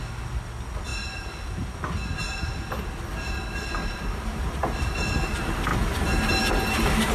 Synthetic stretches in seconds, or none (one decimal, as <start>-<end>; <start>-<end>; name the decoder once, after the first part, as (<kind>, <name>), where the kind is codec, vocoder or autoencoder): 3.8-5.0 (vocoder, BigVGAN v2)